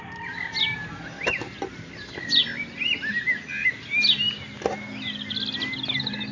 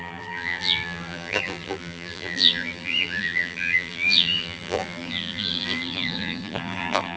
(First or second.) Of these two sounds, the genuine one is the first